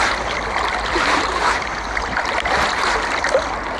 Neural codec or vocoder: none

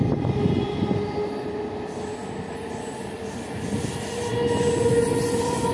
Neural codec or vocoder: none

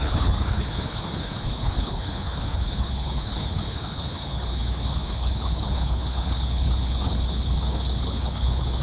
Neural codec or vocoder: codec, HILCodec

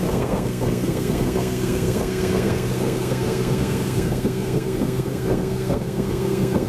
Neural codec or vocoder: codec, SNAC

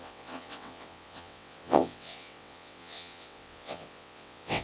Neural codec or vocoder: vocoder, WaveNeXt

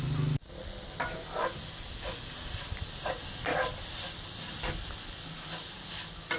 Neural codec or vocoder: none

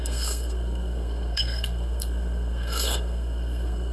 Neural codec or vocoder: codec, SNAC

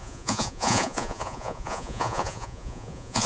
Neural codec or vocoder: vocoder, Vocos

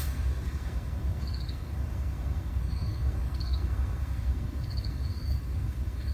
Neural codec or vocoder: codec, SNAC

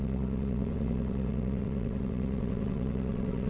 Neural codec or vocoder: vocoder, WaveNeXt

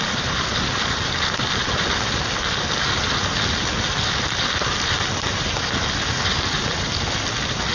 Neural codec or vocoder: none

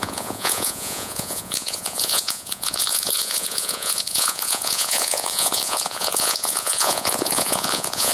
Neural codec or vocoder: vocoder, Vocos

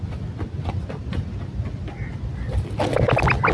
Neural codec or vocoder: none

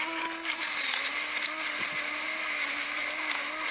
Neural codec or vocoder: none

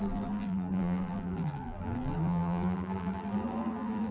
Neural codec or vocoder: vocoder, BigVGAN v2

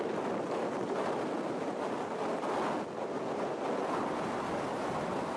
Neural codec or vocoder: none